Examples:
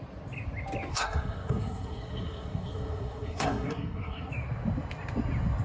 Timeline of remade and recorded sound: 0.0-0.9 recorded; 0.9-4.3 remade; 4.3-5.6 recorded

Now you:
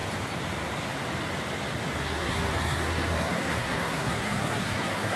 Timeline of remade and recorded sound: 0.0-2.0 recorded; 2.0-5.2 remade

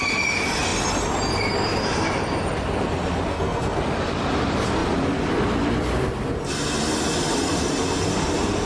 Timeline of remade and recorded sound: 0.0-3.3 recorded; 3.3-3.8 remade; 3.8-8.7 recorded

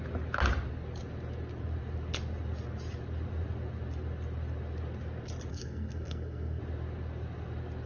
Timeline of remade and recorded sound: 0.0-5.5 recorded; 5.5-6.6 remade; 6.6-7.9 recorded

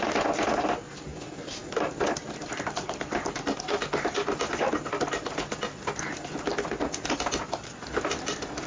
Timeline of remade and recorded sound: 0.0-8.7 recorded